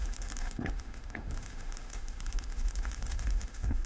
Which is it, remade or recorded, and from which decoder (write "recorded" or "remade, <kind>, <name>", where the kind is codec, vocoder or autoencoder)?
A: remade, autoencoder, DAC-VAE